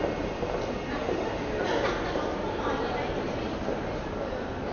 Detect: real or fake real